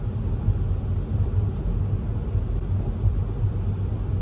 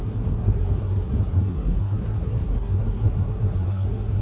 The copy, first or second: second